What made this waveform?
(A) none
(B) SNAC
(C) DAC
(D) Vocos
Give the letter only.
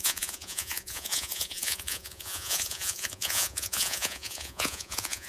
D